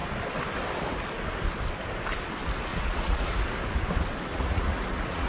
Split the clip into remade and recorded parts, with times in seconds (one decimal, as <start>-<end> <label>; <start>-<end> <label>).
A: 0.0-2.7 recorded; 2.7-3.4 remade; 3.4-4.3 recorded; 4.3-5.3 remade